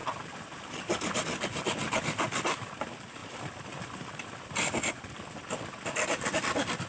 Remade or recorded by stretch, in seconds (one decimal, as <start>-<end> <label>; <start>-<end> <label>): 0.0-3.2 recorded; 3.2-4.9 remade; 4.9-6.9 recorded